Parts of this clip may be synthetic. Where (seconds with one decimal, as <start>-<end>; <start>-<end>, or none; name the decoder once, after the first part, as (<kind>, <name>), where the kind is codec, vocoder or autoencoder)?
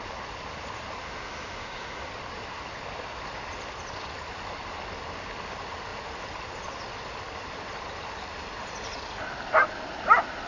1.0-2.1 (autoencoder, DAC-VAE)